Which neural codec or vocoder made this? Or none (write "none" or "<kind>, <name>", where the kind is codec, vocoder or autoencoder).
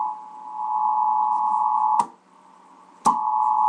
none